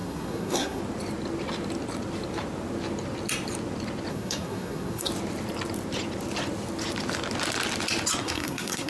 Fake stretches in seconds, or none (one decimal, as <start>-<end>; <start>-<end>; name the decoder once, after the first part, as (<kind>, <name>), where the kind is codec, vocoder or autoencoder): 0.0-0.8 (codec, SNAC); 4.1-5.1; 8.2-8.9